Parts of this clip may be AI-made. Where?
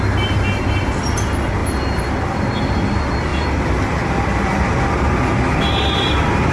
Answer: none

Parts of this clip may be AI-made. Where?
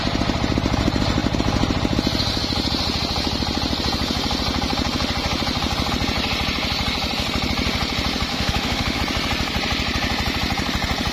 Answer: 8.3-9.0 (autoencoder, DAC-VAE)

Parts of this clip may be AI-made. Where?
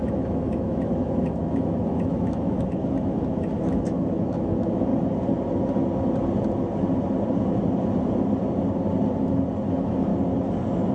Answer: 0.0-4.9 (autoencoder, DAC-VAE); 9.7-10.1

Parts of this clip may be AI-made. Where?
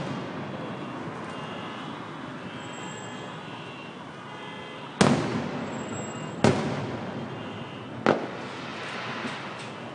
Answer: none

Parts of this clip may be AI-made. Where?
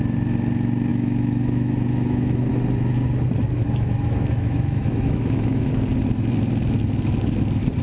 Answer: 0.9-2.5 (autoencoder, DAC-VAE); 3.6-5.7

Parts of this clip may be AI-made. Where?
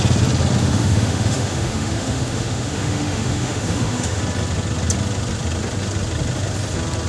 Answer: 0.6-4.2 (autoencoder, DAC-VAE)